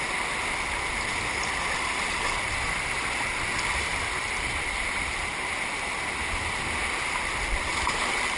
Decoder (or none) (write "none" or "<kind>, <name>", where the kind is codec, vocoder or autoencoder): none